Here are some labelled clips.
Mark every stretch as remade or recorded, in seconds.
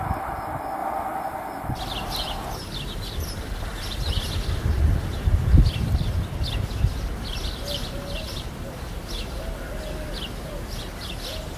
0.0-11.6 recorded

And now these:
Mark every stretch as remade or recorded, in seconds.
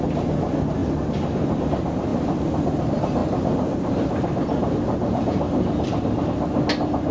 0.0-7.1 recorded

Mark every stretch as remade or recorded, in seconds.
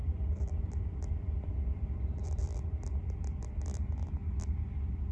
0.0-2.7 remade; 2.7-5.1 recorded